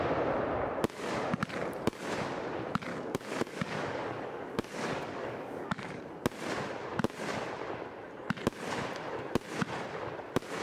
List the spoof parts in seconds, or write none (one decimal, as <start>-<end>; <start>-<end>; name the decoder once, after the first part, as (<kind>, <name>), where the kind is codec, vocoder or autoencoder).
2.9-6.0 (codec, DAC)